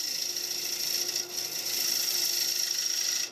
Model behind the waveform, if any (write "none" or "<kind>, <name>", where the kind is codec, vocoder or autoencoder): none